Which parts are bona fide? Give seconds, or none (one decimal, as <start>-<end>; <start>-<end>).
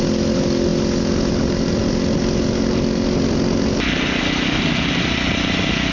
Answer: 0.0-5.9